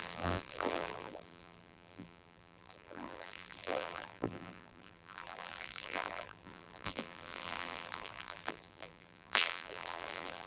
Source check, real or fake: fake